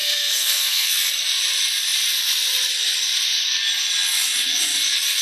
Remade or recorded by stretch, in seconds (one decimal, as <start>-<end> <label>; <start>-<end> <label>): 0.0-0.9 remade; 0.9-5.2 recorded